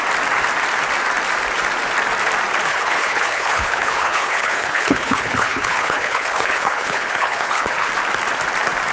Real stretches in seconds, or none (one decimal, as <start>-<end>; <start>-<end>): 0.0-2.7; 7.9-8.9